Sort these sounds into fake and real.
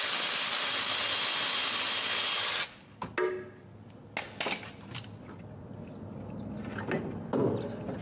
real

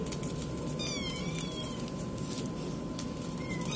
real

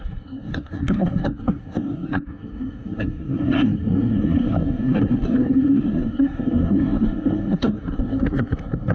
fake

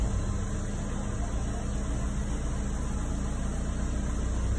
real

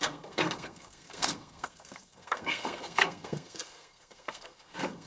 fake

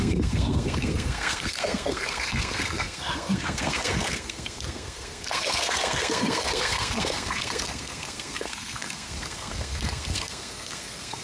fake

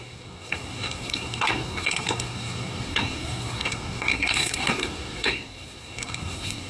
fake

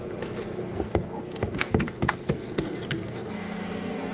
fake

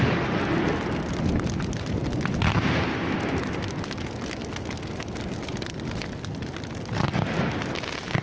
real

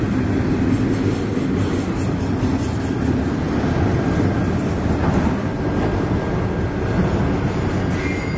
real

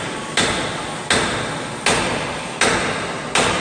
real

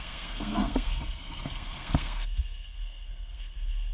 fake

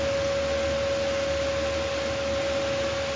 real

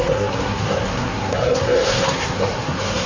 fake